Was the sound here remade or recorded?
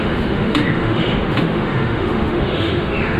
remade